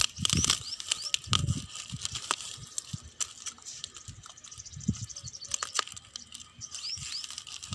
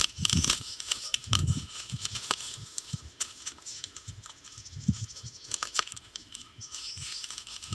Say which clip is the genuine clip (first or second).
first